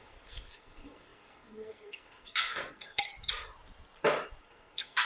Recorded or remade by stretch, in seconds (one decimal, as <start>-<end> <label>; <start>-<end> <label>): 0.0-3.1 remade; 3.1-4.4 recorded; 4.4-5.1 remade